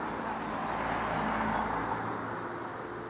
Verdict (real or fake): real